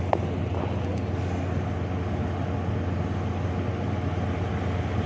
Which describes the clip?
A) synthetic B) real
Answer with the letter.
B